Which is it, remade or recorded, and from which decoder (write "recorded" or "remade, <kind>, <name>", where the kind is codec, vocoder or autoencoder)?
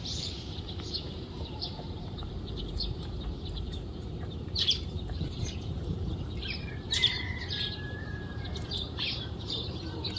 remade, vocoder, BigVGAN v2